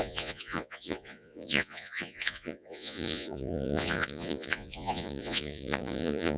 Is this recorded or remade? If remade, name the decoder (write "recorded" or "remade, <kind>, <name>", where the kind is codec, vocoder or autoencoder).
remade, vocoder, Vocos